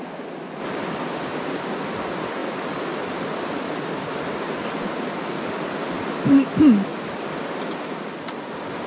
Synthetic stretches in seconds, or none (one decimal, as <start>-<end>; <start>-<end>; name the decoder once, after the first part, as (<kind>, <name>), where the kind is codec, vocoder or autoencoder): none